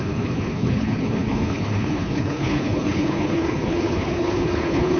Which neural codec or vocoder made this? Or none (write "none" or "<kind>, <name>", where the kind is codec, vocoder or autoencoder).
codec, HILCodec